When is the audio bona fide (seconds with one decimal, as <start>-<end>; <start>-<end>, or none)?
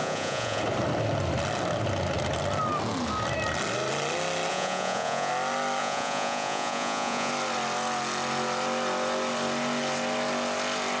0.6-4.5; 5.3-5.8; 7.3-11.0